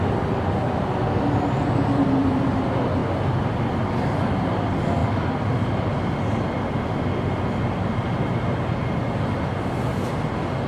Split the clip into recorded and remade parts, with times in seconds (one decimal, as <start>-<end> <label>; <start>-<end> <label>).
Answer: 0.0-10.7 recorded